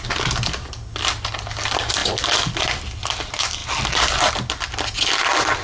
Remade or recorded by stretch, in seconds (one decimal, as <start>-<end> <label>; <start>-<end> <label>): 0.0-5.6 recorded